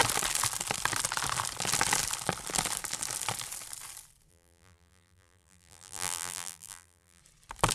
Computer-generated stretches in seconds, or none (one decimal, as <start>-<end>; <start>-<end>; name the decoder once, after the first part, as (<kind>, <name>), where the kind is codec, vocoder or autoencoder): 4.3-7.2 (vocoder, BigVGAN v2)